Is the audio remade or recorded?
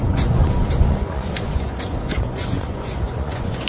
remade